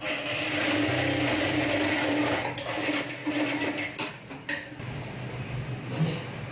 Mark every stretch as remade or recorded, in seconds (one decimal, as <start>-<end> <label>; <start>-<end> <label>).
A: 0.0-3.2 recorded; 3.2-4.1 remade; 4.1-6.5 recorded